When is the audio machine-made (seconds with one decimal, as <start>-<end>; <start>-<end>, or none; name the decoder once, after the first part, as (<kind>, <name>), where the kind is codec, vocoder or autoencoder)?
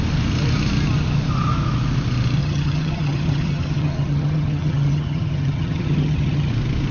2.4-6.5 (vocoder, HiFi-GAN)